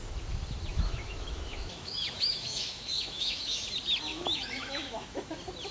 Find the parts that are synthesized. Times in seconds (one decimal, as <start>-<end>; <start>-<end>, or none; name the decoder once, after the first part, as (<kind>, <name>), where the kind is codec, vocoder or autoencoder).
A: 0.7-3.6 (autoencoder, DAC-VAE); 4.1-5.3